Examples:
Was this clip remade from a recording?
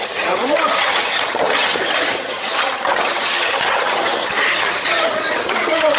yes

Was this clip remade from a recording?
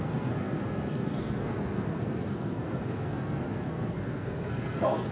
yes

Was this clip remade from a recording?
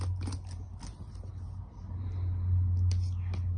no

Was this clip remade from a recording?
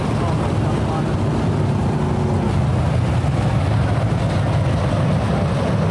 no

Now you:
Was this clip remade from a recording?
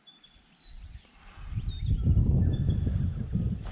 no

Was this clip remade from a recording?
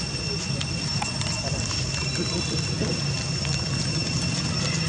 no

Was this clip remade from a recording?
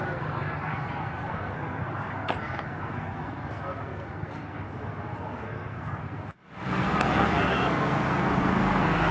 yes